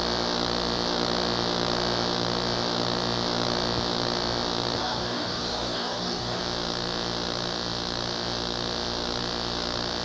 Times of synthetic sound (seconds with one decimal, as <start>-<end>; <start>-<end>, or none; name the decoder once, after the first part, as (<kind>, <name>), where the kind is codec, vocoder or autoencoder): 4.8-6.4 (codec, DAC)